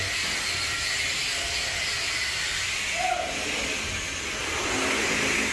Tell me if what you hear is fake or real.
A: real